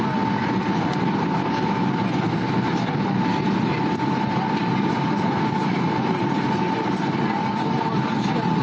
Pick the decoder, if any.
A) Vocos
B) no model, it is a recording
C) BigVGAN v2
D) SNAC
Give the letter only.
B